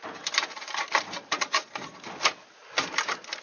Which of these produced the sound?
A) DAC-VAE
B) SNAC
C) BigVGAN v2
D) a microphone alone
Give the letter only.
D